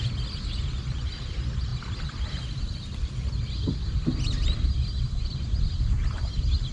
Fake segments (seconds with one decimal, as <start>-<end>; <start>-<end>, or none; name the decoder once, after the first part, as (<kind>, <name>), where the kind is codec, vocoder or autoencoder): none